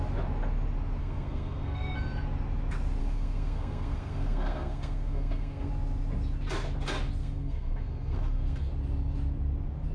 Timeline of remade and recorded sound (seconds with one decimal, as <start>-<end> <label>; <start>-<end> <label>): 0.0-1.0 recorded; 1.0-1.9 remade; 1.9-3.0 recorded; 3.0-5.7 remade; 5.7-7.2 recorded; 7.2-8.7 remade; 8.7-9.9 recorded